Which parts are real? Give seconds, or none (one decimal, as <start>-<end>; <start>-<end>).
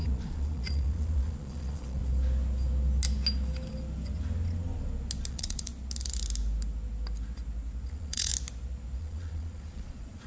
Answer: 2.0-5.3; 5.7-7.9; 8.3-9.0